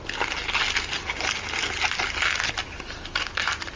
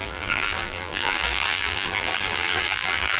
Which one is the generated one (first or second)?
second